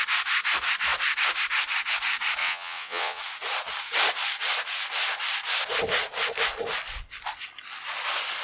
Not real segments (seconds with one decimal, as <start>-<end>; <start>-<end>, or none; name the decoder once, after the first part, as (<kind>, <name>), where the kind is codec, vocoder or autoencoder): 2.4-3.2 (vocoder, WaveNeXt)